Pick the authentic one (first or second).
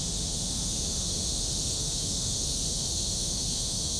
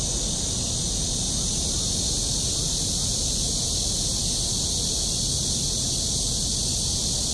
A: second